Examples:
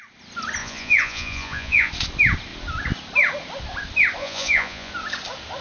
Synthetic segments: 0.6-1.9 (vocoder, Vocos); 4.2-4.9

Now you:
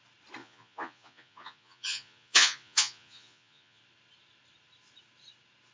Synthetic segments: 0.4-3.8 (vocoder, Vocos)

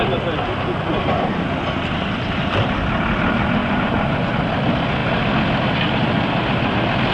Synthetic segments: 3.6-4.3 (vocoder, Vocos)

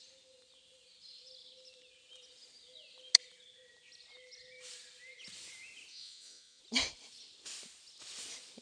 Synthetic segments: 5.9-6.6 (vocoder, Vocos)

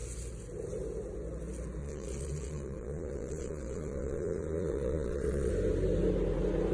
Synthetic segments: 1.8-5.5 (vocoder, Vocos)

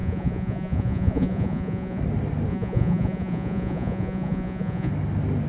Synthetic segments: 0.0-2.0 (vocoder, Vocos); 2.5-4.9

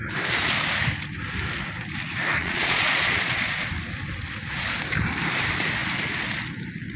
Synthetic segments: 2.4-3.7 (vocoder, Vocos)

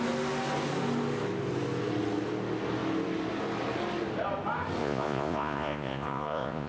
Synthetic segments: 4.8-6.7 (vocoder, Vocos)